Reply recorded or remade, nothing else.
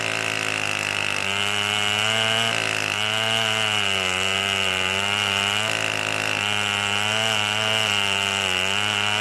recorded